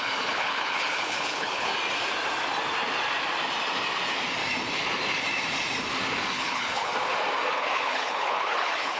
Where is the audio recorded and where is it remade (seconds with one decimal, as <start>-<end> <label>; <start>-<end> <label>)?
0.0-1.7 remade; 1.7-6.3 recorded; 6.3-6.9 remade; 6.9-7.5 recorded; 7.5-9.0 remade